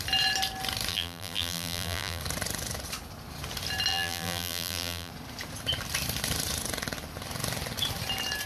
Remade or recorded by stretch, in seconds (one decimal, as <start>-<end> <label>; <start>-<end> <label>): 0.0-0.9 recorded; 0.9-2.2 remade; 2.2-3.9 recorded; 3.9-5.1 remade; 5.1-8.5 recorded